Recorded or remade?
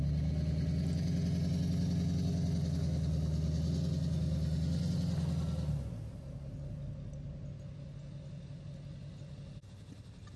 recorded